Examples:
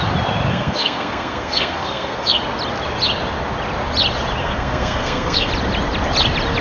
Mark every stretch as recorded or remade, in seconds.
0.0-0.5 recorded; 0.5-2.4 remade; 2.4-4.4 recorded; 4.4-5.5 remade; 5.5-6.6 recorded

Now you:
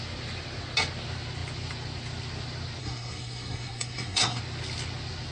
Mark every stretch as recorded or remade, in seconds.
0.0-2.8 recorded; 2.8-4.4 remade; 4.4-5.3 recorded

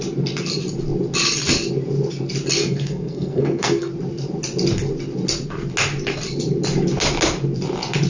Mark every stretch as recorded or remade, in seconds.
0.0-2.6 recorded; 2.6-3.9 remade; 3.9-8.1 recorded

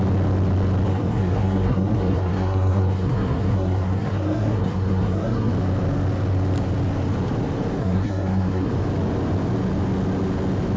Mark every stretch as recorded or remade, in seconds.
0.0-0.9 recorded; 0.9-5.5 remade; 5.5-7.8 recorded; 7.8-8.7 remade; 8.7-10.8 recorded

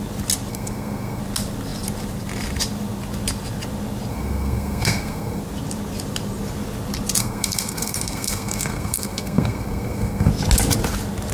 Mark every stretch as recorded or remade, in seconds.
0.0-0.5 recorded; 0.5-1.2 remade; 1.2-4.1 recorded; 4.1-5.4 remade; 5.4-7.2 recorded; 7.2-10.3 remade; 10.3-11.3 recorded

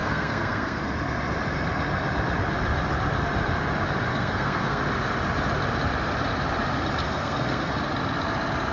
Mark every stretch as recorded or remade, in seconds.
0.0-0.8 remade; 0.8-4.1 recorded; 4.1-4.8 remade; 4.8-7.0 recorded; 7.0-7.7 remade; 7.7-8.7 recorded

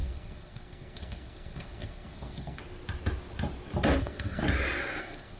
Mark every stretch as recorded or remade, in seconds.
0.0-2.6 remade; 2.6-4.0 recorded; 4.0-4.4 remade; 4.4-5.0 recorded; 5.0-5.4 remade